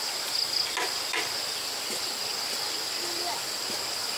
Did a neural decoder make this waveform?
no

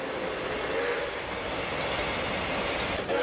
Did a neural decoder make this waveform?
no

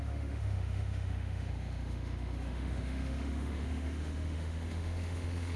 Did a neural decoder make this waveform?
yes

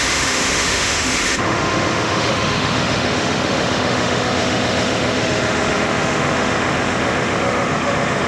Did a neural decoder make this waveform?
yes